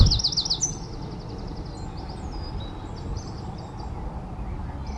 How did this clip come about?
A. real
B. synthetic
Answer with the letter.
A